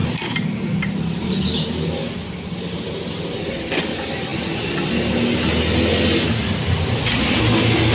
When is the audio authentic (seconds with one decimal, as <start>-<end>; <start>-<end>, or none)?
0.0-7.9